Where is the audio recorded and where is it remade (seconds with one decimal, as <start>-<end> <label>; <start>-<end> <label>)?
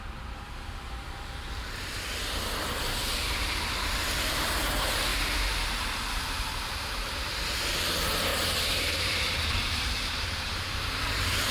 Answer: 0.0-5.1 recorded; 5.1-7.4 remade; 7.4-8.3 recorded; 8.3-11.5 remade